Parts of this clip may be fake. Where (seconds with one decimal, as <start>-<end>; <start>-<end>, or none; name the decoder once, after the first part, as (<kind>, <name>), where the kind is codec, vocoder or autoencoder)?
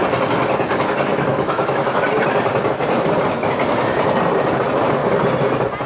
1.3-2.0 (autoencoder, DAC-VAE)